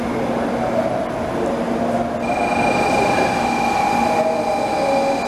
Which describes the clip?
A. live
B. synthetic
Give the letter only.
A